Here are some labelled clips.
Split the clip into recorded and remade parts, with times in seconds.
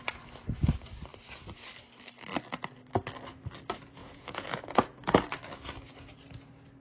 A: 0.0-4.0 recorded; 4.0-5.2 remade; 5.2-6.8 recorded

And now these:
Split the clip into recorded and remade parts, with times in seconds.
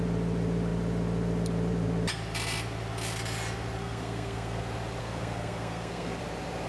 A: 0.0-3.8 recorded; 3.8-4.6 remade; 4.6-5.0 recorded; 5.0-6.2 remade; 6.2-6.7 recorded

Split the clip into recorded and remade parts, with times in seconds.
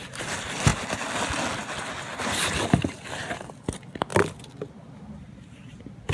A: 0.0-6.1 recorded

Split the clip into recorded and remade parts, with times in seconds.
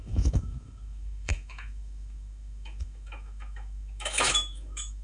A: 0.0-5.0 remade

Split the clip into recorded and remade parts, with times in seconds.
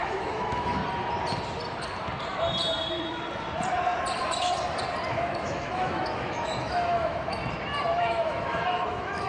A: 0.0-0.8 remade; 0.8-5.1 recorded; 5.1-7.4 remade; 7.4-8.0 recorded; 8.0-9.3 remade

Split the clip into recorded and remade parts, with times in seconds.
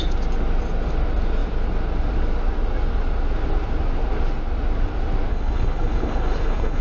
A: 0.0-5.3 recorded; 5.3-6.8 remade